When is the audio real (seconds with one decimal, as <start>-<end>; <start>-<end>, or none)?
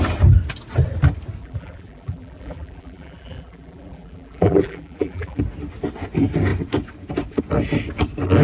0.0-1.4; 5.4-8.4